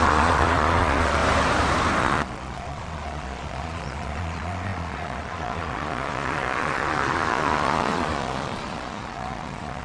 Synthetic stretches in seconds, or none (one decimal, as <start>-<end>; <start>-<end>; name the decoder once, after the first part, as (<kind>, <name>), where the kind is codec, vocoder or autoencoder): 0.0-1.2 (vocoder, Vocos); 2.0-9.8